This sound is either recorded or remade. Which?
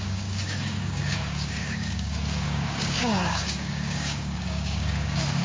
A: remade